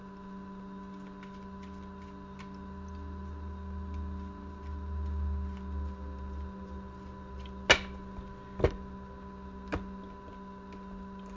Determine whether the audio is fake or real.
real